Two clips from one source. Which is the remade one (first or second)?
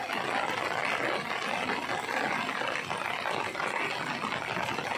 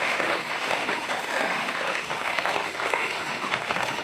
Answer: second